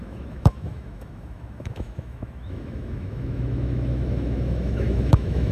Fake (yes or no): yes